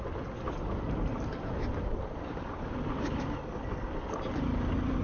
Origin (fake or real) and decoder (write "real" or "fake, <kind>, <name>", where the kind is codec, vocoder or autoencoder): real